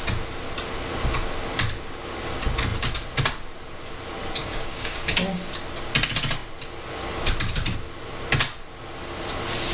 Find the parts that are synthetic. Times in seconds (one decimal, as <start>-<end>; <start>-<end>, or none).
4.4-5.1